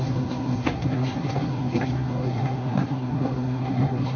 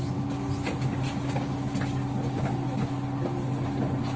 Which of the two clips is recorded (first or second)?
second